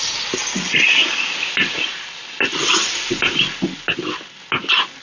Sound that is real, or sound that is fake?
real